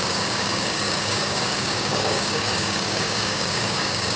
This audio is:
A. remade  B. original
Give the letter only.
A